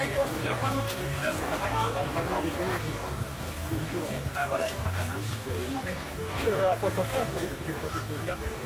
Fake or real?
fake